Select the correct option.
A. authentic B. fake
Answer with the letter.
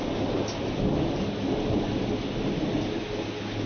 A